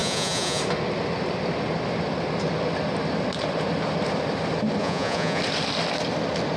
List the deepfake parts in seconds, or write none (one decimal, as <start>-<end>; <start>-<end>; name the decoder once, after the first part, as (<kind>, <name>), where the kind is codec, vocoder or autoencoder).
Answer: 0.0-0.6 (vocoder, Vocos); 4.8-5.4